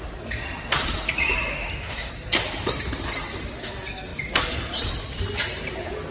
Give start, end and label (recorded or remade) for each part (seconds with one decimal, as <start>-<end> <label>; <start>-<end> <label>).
0.0-1.5 recorded; 1.5-2.1 remade; 2.1-6.1 recorded